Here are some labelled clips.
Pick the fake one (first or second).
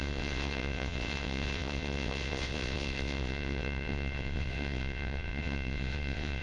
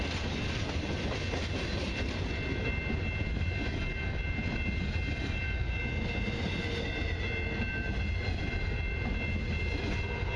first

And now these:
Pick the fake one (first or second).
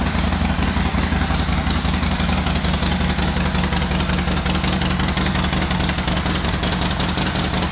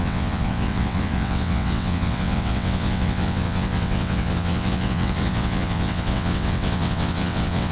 second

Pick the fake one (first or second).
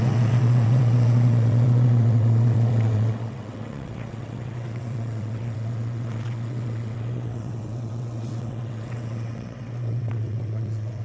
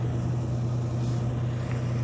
first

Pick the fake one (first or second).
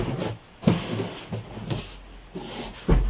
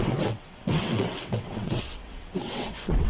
second